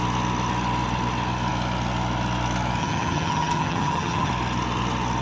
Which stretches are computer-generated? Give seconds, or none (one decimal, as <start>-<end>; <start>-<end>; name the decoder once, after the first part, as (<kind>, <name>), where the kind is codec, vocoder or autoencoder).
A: 2.8-4.3 (vocoder, HiFi-GAN)